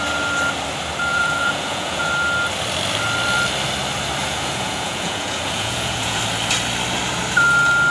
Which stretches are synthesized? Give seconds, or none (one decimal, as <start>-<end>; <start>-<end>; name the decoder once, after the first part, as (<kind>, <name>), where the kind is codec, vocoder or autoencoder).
1.1-2.1 (vocoder, Vocos); 4.2-6.2